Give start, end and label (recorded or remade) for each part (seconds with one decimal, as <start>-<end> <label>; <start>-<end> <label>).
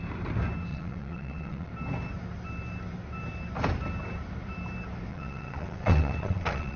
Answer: 0.0-0.7 recorded; 0.7-1.7 remade; 1.7-5.1 recorded; 5.1-6.8 remade